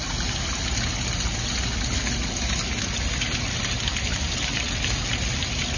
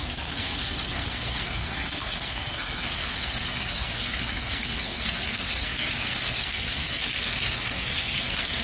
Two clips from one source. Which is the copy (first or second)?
second